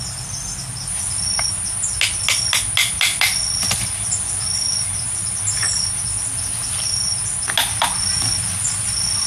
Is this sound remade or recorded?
recorded